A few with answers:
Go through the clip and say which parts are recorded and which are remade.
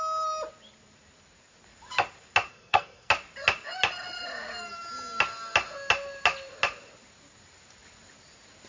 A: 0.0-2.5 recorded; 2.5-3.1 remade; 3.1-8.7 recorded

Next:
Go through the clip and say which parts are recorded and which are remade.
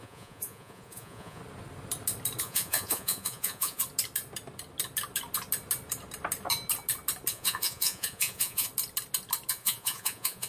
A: 0.0-1.4 remade; 1.4-2.4 recorded; 2.4-3.8 remade; 3.8-7.3 recorded; 7.3-8.7 remade; 8.7-9.5 recorded; 9.5-10.5 remade